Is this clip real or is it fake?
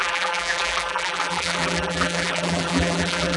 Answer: fake